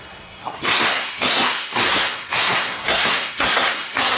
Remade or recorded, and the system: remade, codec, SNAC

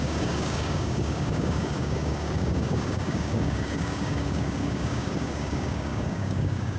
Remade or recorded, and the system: remade, codec, DAC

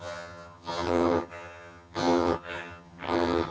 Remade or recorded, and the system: remade, vocoder, HiFi-GAN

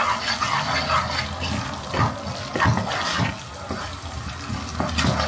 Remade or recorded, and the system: recorded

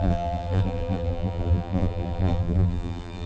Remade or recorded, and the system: remade, vocoder, BigVGAN v2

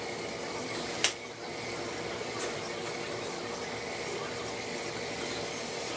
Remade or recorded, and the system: recorded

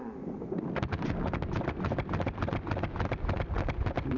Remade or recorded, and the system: recorded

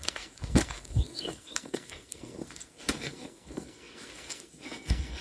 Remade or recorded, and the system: remade, codec, SNAC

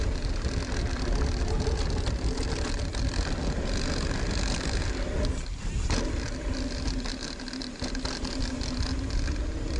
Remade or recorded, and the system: recorded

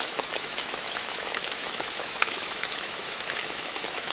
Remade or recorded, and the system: remade, autoencoder, DAC-VAE